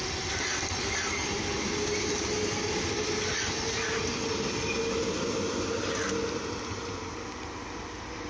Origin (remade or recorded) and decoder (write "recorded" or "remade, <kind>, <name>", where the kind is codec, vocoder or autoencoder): recorded